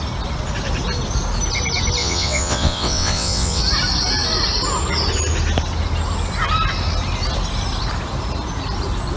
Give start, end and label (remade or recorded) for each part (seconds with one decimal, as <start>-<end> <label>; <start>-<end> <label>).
0.0-2.0 recorded; 2.0-3.6 remade; 3.6-9.2 recorded